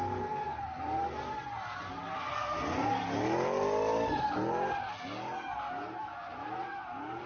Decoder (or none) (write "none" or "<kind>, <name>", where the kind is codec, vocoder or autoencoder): none